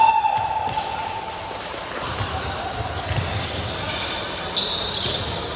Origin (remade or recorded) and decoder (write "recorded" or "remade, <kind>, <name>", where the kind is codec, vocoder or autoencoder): recorded